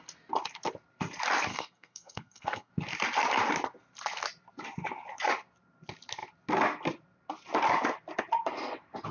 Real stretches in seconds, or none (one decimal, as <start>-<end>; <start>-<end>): 0.0-1.5; 2.7-9.1